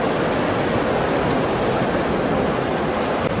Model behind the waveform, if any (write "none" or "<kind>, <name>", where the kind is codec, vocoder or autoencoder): none